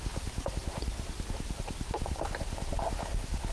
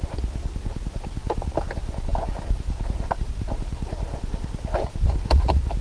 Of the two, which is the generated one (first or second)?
first